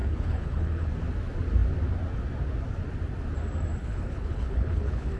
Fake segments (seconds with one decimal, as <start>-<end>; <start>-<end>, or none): 0.0-0.9; 3.8-5.2